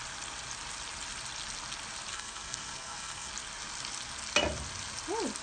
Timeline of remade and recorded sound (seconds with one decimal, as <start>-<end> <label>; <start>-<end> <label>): 0.0-2.1 recorded; 2.1-3.3 remade; 3.3-5.4 recorded